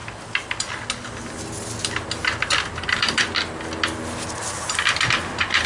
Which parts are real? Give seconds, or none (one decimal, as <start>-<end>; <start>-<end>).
0.0-5.7